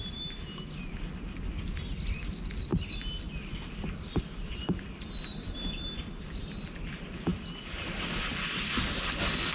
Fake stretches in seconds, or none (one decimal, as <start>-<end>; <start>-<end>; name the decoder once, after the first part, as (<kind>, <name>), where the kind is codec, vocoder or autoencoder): none